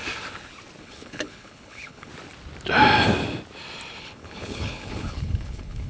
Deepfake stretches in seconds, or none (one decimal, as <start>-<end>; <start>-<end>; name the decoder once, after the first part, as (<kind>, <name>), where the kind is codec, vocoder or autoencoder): 0.8-2.1 (codec, HILCodec); 4.0-5.9